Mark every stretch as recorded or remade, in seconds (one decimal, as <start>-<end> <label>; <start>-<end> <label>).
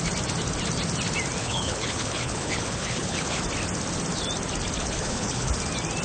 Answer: 0.0-1.4 recorded; 1.4-3.4 remade; 3.4-4.8 recorded; 4.8-5.5 remade; 5.5-6.0 recorded